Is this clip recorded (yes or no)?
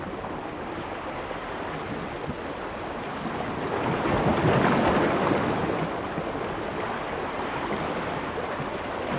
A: yes